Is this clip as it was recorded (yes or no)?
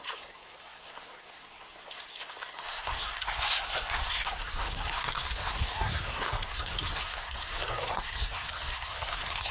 no